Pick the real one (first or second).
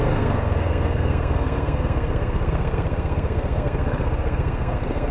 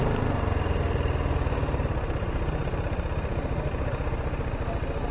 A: second